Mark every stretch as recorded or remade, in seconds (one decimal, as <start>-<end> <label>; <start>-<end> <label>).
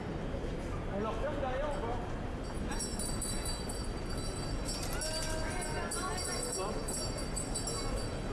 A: 0.0-6.3 recorded; 6.3-7.0 remade; 7.0-8.3 recorded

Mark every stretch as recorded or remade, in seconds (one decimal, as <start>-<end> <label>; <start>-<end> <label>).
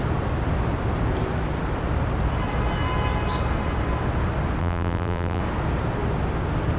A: 0.0-4.6 recorded; 4.6-5.4 remade; 5.4-6.8 recorded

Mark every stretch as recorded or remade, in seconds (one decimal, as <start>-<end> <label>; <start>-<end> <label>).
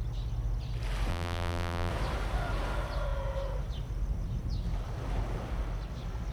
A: 0.0-1.1 recorded; 1.1-1.9 remade; 1.9-6.3 recorded